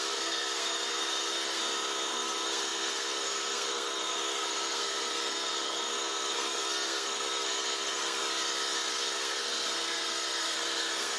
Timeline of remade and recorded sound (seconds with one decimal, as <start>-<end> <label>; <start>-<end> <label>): 0.0-1.6 remade; 1.6-2.1 recorded; 2.1-8.2 remade; 8.2-8.9 recorded; 8.9-11.2 remade